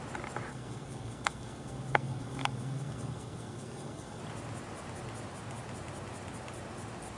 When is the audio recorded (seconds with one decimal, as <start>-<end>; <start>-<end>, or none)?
0.0-0.5; 4.2-7.2

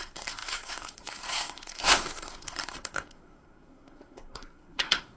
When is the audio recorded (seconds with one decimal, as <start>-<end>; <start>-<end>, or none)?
none

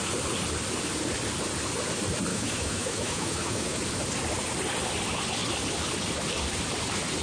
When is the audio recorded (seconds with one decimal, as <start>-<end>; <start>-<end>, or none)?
0.0-2.3; 3.8-7.2